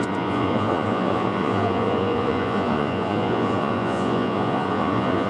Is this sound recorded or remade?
remade